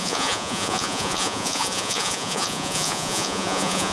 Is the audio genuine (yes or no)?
no